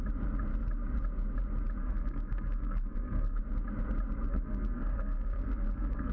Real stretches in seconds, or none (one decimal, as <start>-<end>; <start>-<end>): 0.0-1.8; 3.4-4.3